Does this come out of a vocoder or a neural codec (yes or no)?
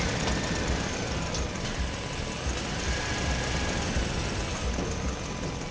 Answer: no